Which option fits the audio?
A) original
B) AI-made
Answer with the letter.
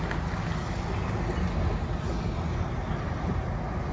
A